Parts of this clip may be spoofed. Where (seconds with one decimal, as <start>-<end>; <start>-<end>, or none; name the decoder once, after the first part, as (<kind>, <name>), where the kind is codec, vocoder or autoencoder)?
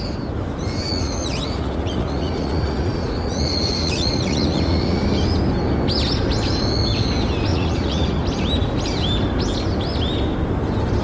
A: 0.9-5.0 (vocoder, Vocos); 7.5-8.2